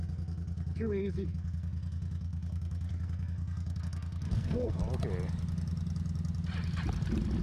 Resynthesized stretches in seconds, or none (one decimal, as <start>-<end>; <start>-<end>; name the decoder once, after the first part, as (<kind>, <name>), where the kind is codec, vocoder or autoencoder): 0.0-4.8 (codec, SNAC)